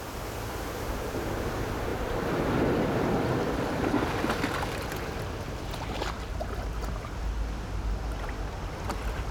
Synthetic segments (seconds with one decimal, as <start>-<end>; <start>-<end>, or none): none